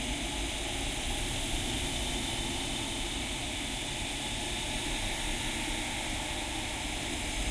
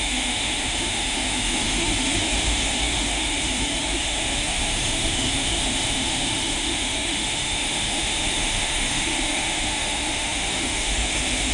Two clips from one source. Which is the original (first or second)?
first